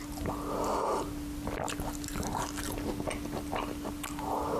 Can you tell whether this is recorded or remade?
recorded